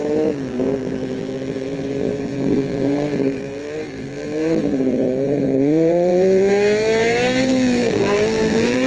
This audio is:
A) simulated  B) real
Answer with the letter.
A